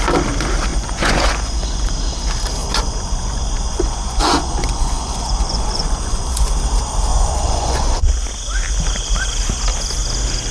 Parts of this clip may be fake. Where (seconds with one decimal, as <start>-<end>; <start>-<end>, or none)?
0.7-1.9; 2.6-6.5; 7.1-8.1